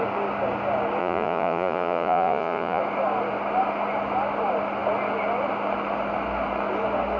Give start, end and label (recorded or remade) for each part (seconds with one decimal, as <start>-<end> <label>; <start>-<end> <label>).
0.0-1.0 recorded; 1.0-2.8 remade; 2.8-7.2 recorded